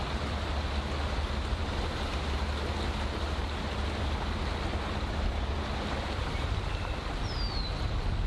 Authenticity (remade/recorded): recorded